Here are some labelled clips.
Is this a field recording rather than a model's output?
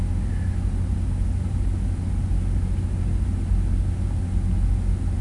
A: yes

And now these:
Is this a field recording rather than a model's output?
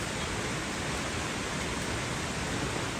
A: yes